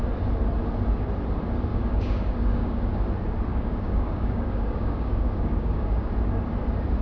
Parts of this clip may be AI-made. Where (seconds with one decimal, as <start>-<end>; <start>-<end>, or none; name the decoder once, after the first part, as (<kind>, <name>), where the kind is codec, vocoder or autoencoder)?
1.7-3.0 (codec, DAC); 3.5-6.1

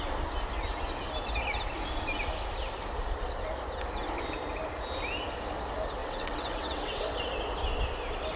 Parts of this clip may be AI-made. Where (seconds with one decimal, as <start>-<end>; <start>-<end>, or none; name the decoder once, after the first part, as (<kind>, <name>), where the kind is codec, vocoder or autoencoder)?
6.0-7.1 (vocoder, WaveNeXt)

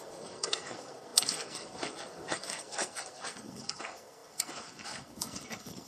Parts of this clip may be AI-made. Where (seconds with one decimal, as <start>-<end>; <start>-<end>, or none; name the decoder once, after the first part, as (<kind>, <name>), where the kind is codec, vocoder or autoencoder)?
0.0-5.9 (codec, SNAC)

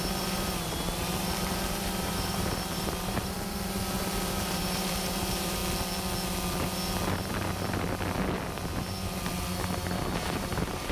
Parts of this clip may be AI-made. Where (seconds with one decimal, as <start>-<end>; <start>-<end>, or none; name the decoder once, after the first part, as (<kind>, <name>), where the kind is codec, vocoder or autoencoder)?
0.0-5.6 (vocoder, BigVGAN v2); 10.3-10.9

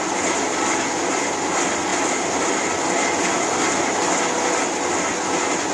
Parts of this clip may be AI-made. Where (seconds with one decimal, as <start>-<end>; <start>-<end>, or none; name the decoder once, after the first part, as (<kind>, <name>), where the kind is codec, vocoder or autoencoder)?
none

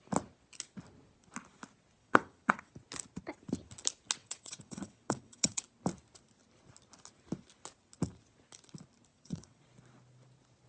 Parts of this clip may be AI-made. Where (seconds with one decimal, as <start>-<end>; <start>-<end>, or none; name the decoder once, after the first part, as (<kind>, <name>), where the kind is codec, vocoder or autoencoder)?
2.0-2.7 (vocoder, WaveNeXt); 4.2-5.6; 9.1-9.6

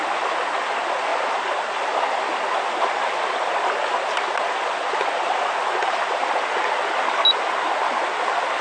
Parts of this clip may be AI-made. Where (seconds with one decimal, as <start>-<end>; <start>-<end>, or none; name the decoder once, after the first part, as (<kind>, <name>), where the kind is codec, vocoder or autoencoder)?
none

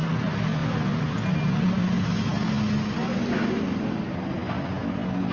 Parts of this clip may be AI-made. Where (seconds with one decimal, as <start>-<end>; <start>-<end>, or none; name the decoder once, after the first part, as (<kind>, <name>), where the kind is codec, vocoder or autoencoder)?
none